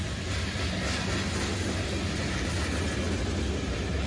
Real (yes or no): yes